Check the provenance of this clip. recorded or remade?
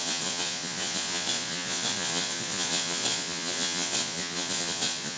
remade